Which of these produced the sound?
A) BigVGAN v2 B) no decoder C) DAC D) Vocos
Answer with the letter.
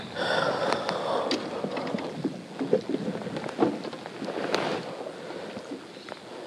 B